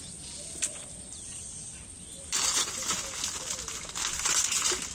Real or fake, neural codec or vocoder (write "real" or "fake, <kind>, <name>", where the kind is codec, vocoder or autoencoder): real